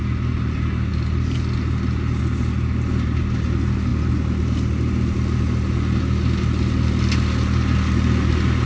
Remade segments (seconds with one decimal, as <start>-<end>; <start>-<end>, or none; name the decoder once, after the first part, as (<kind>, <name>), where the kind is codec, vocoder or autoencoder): none